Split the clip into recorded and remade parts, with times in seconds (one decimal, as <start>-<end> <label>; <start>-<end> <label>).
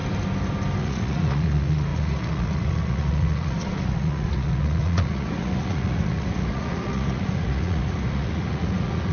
0.0-0.8 recorded; 0.8-9.1 remade